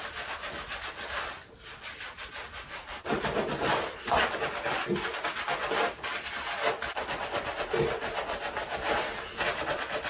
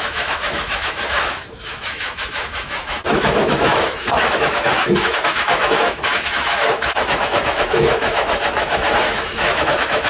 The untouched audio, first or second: first